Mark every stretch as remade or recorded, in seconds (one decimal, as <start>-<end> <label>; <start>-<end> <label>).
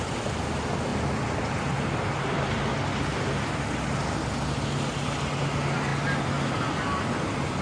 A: 0.0-7.6 recorded